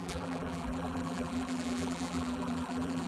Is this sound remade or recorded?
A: remade